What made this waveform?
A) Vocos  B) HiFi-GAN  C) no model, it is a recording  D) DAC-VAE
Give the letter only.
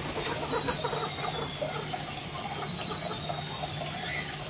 C